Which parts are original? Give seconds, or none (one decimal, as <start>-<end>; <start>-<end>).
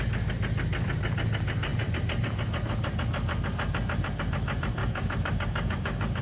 0.0-4.8